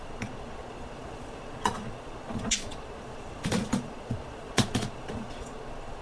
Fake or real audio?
fake